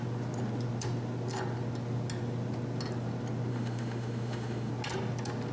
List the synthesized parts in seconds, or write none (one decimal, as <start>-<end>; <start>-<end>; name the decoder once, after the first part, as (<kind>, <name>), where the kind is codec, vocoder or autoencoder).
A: 3.5-4.7 (autoencoder, DAC-VAE)